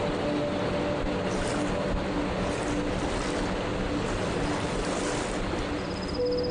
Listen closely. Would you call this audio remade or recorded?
recorded